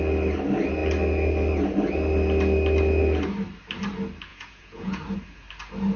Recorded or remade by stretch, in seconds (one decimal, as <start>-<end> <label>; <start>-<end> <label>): 0.0-4.3 recorded; 4.3-5.0 remade; 5.0-6.0 recorded